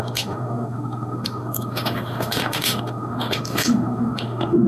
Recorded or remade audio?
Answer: remade